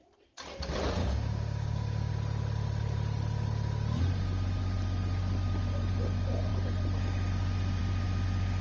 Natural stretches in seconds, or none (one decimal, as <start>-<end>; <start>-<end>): 0.0-1.0; 2.1-8.6